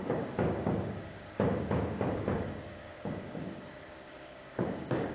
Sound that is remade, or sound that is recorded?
remade